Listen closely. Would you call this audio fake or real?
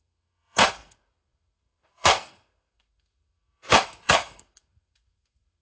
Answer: fake